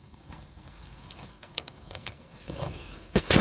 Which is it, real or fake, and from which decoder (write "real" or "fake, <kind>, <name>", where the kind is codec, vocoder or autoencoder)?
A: fake, codec, SNAC